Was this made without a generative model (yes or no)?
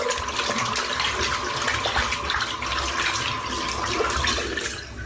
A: yes